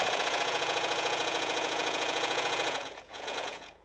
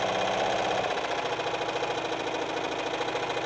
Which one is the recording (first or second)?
second